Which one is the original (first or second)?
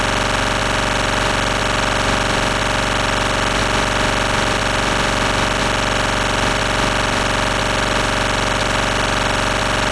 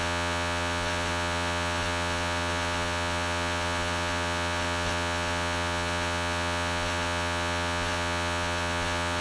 first